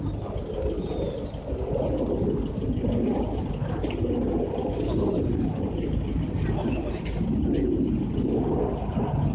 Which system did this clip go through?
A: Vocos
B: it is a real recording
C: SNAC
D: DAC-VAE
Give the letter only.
B